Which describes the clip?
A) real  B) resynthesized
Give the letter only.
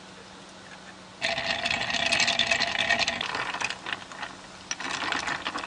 A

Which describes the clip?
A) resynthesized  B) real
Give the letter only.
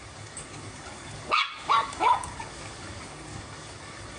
A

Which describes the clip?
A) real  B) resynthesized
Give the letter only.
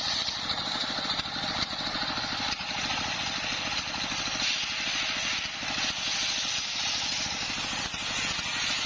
A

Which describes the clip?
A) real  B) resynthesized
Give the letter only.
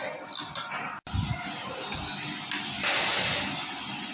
A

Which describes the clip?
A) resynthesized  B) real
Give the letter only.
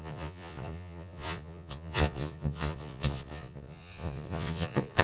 A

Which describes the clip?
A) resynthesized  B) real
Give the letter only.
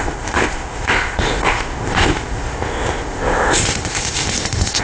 A